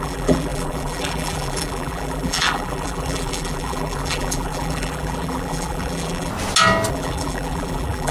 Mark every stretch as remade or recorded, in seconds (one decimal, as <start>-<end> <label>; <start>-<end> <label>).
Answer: 0.0-6.3 remade; 6.3-6.9 recorded; 6.9-8.1 remade